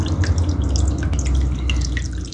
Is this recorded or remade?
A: recorded